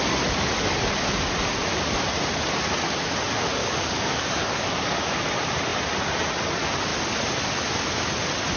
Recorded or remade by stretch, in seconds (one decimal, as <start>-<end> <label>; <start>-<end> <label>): 0.0-3.6 recorded; 3.6-5.3 remade; 5.3-8.6 recorded